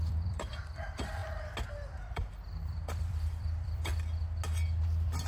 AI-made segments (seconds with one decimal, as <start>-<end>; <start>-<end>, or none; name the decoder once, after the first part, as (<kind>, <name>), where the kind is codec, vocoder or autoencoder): 0.0-1.2 (vocoder, BigVGAN v2); 1.7-3.9